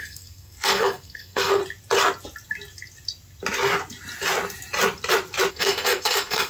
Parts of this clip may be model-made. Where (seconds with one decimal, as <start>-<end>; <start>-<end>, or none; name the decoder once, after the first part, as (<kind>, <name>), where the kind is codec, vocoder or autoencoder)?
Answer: 0.0-1.6 (codec, SNAC); 5.5-6.5

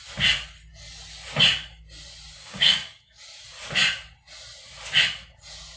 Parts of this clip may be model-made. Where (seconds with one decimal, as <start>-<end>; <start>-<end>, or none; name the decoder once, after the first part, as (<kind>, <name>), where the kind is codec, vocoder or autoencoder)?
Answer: 2.4-3.2 (codec, DAC)

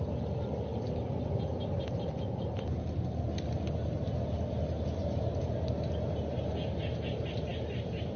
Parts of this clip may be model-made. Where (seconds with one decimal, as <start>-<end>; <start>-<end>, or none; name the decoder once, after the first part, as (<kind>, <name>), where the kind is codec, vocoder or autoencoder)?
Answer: none

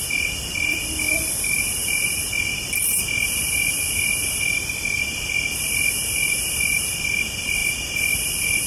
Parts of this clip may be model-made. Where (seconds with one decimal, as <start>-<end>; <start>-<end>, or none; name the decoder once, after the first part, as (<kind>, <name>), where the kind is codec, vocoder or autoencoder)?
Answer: 0.0-8.7 (vocoder, BigVGAN v2)